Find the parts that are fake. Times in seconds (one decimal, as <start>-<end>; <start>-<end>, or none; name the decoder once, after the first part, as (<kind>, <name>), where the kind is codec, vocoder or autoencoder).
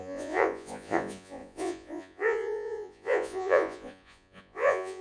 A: 0.0-5.0 (vocoder, Vocos)